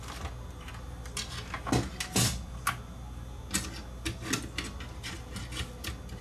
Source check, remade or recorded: recorded